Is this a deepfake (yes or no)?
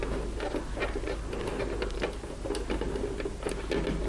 no